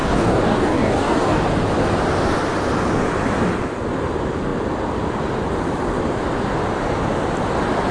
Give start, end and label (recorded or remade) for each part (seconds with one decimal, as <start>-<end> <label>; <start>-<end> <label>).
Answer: 0.0-1.4 remade; 1.4-7.9 recorded